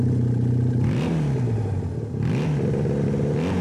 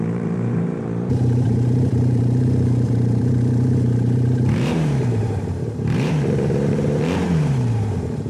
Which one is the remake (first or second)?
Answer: second